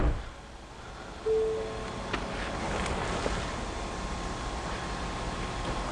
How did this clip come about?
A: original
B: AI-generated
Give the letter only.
A